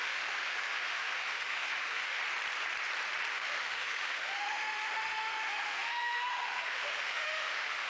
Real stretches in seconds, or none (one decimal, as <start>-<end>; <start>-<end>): 2.2-3.3